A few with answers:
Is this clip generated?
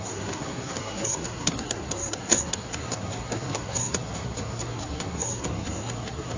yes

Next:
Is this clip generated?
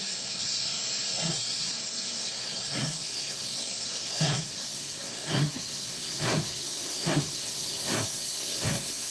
yes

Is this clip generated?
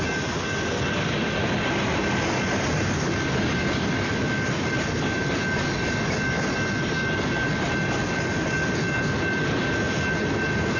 no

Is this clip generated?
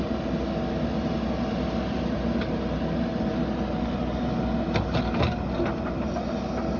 no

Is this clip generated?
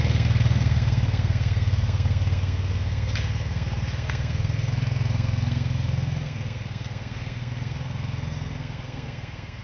yes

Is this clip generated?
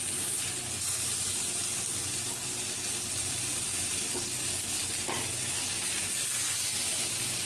no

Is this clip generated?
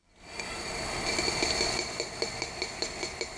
no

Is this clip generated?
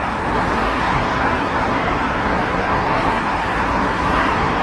yes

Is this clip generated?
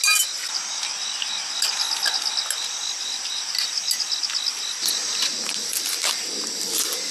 no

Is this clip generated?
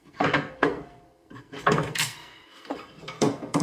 yes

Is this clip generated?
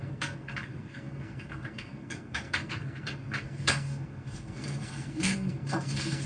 yes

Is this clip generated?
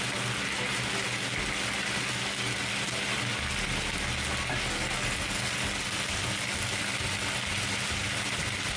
no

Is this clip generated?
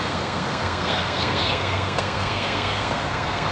yes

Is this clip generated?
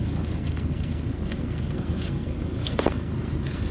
yes